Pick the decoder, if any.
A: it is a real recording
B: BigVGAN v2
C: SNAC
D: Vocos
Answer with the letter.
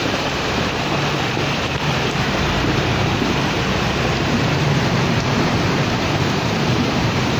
B